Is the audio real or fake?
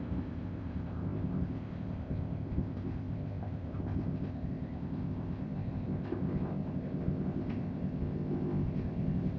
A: fake